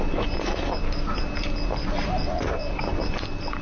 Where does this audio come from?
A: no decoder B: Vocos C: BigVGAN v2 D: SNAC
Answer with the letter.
A